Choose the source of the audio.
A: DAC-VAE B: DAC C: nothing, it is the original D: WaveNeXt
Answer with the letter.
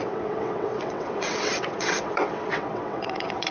D